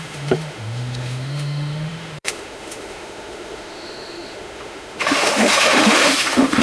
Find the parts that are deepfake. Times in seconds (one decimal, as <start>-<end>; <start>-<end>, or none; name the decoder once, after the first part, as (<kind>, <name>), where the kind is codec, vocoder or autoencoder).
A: 0.0-6.6 (autoencoder, DAC-VAE)